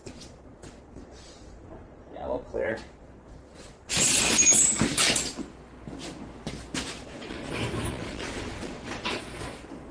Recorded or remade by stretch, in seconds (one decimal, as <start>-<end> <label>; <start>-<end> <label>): 0.0-4.2 remade; 4.2-7.0 recorded; 7.0-7.5 remade; 7.5-7.9 recorded; 7.9-9.2 remade; 9.2-9.9 recorded